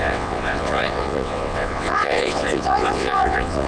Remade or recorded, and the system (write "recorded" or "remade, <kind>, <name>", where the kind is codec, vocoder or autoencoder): remade, vocoder, WaveNeXt